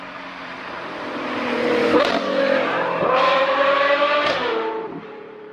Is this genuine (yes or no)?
no